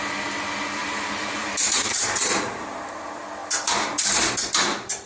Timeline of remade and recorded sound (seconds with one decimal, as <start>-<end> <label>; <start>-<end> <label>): 0.0-0.8 recorded; 0.8-3.0 remade; 3.0-5.1 recorded